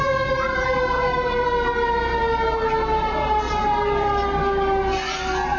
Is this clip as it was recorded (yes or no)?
yes